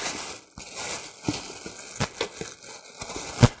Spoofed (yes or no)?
no